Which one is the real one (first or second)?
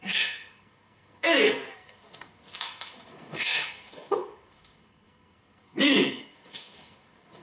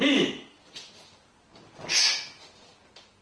second